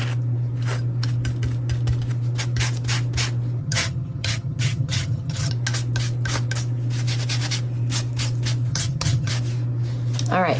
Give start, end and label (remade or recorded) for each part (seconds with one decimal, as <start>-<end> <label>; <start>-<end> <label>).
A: 0.0-3.6 recorded; 3.6-5.5 remade; 5.5-8.7 recorded; 8.7-9.3 remade; 9.3-10.6 recorded